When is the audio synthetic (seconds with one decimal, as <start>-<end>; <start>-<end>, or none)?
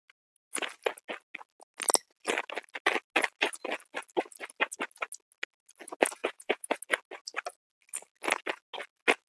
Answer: 6.2-6.8